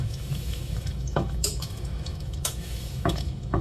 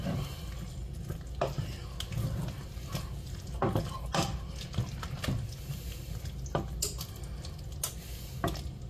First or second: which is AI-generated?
first